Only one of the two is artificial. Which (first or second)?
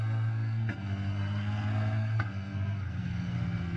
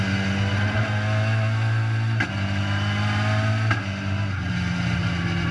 first